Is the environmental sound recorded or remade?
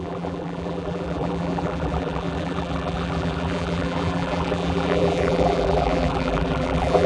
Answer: remade